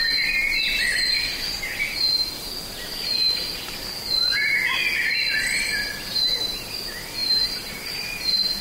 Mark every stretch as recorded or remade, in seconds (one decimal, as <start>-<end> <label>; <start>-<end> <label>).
0.0-7.2 recorded; 7.2-8.2 remade; 8.2-8.6 recorded